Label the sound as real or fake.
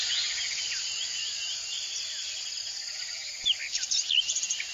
real